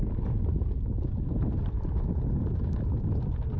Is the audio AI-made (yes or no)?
no